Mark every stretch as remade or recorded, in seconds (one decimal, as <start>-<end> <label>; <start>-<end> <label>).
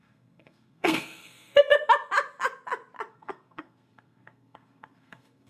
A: 0.0-1.7 remade; 1.7-3.1 recorded; 3.1-5.5 remade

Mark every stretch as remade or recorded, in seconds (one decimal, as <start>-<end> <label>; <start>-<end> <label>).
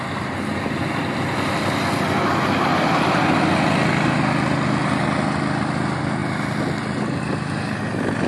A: 0.0-8.3 recorded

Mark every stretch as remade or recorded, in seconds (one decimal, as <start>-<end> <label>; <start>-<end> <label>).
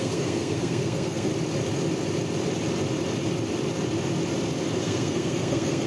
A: 0.0-1.3 remade; 1.3-4.8 recorded; 4.8-5.9 remade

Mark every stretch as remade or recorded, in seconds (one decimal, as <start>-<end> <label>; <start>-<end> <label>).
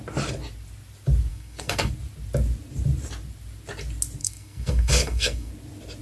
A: 0.0-1.3 recorded; 1.3-1.9 remade; 1.9-4.2 recorded; 4.2-5.5 remade; 5.5-6.0 recorded